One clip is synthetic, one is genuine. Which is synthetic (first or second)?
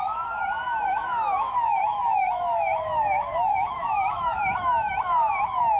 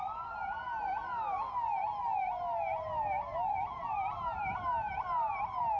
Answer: first